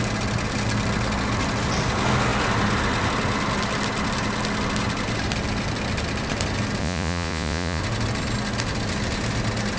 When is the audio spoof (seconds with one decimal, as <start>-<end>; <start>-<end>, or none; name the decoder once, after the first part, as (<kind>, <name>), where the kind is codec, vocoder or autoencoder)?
6.8-7.8 (vocoder, Vocos)